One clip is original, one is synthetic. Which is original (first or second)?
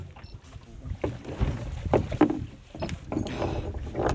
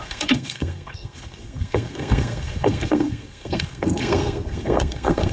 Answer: first